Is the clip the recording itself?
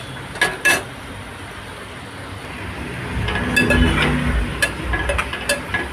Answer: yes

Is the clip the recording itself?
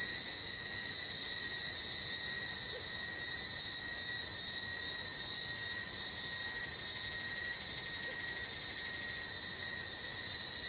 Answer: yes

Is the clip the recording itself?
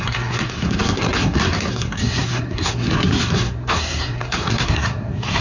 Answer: no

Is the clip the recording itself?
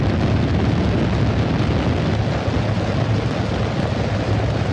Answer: yes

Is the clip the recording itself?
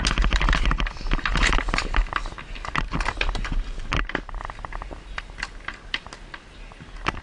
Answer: yes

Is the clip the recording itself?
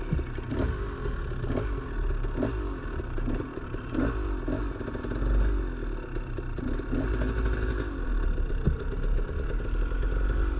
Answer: yes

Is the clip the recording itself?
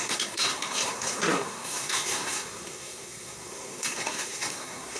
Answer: no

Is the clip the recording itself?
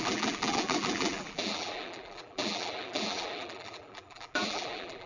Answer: no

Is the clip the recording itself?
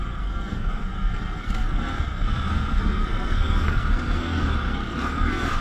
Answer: no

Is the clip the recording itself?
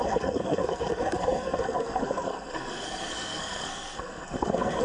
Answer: no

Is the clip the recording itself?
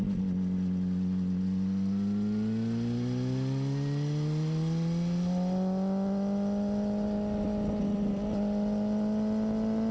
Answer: yes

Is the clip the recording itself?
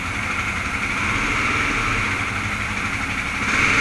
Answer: yes